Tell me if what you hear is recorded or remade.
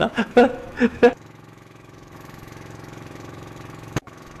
remade